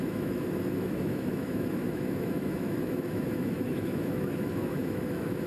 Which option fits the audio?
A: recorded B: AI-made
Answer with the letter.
B